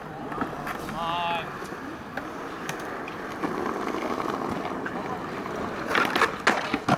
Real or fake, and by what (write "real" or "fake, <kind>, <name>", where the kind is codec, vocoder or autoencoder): real